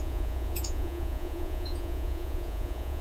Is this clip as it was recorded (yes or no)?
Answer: no